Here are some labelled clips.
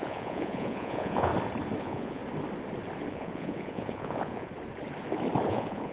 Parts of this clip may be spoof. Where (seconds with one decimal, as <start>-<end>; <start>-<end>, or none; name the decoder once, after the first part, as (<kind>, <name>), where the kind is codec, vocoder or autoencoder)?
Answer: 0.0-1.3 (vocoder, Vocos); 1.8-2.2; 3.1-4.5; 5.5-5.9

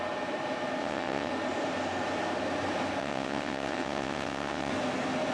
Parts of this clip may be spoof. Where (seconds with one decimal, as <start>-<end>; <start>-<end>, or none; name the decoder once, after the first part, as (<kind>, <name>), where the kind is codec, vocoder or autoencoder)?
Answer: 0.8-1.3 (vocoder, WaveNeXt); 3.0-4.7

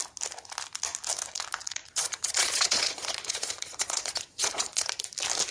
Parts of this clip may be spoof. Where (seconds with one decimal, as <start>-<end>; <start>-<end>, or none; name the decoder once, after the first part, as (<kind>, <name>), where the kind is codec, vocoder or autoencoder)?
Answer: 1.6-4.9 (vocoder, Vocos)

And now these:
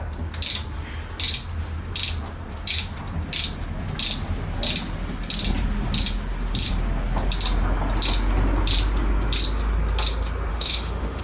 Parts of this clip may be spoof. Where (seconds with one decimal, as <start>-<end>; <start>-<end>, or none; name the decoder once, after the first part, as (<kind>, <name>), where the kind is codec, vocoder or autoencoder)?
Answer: 10.5-11.2 (autoencoder, DAC-VAE)

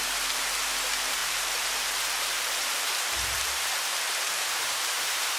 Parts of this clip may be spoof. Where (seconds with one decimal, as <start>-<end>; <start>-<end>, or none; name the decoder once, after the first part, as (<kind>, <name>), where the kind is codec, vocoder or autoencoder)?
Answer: 0.0-5.4 (vocoder, BigVGAN v2)

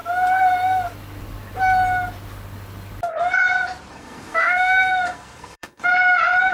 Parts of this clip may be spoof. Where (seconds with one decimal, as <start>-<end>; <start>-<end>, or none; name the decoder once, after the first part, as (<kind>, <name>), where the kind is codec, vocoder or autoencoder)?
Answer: 3.9-5.9 (codec, SNAC)